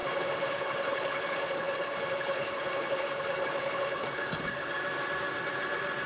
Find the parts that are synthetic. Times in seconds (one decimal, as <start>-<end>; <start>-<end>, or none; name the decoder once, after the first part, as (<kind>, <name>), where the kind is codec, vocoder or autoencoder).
0.0-4.8 (codec, HILCodec)